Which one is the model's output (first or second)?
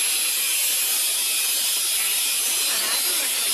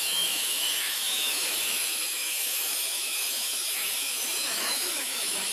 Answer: second